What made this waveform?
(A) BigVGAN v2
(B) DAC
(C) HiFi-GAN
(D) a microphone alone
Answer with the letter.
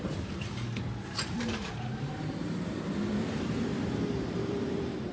A